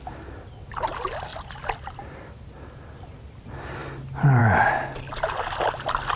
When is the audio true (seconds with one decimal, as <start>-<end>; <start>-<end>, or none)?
0.0-6.2